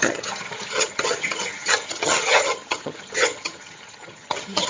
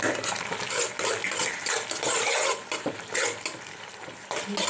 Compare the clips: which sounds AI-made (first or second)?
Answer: first